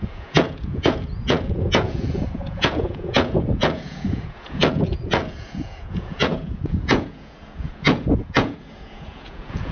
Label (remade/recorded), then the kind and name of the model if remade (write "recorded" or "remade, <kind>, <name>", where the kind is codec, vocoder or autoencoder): remade, vocoder, Vocos